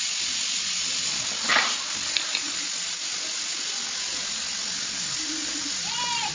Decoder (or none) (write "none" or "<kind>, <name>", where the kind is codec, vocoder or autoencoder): none